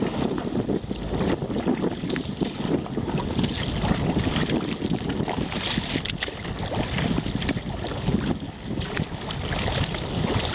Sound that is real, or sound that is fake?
real